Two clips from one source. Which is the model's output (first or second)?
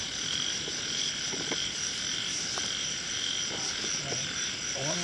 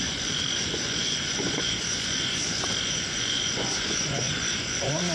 second